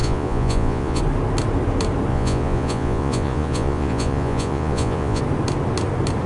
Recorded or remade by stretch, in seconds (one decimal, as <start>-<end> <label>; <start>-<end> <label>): 0.0-1.0 remade; 1.0-2.1 recorded; 2.1-5.2 remade; 5.2-6.3 recorded